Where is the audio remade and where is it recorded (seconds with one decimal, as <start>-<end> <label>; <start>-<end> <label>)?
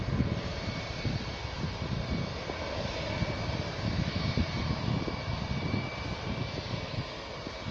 0.0-7.7 recorded